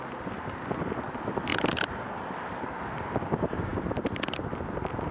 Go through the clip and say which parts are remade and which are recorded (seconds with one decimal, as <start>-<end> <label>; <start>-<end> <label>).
0.0-5.1 recorded